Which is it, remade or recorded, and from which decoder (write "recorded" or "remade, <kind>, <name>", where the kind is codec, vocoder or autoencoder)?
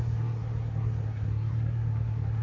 remade, codec, SNAC